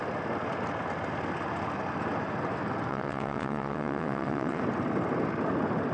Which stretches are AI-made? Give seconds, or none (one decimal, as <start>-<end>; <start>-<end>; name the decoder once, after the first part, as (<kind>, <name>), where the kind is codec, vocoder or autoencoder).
2.9-4.6 (vocoder, WaveNeXt)